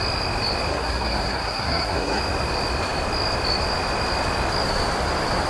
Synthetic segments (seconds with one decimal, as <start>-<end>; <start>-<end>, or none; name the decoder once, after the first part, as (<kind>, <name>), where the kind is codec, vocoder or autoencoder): 0.7-2.2 (codec, SNAC)